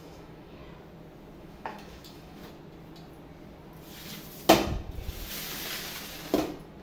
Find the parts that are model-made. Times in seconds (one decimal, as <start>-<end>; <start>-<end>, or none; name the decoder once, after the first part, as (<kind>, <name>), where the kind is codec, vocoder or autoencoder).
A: 0.0-0.6 (autoencoder, DAC-VAE); 1.4-2.4